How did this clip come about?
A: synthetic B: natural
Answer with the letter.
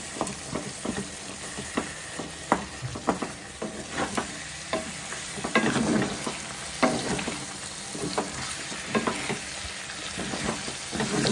B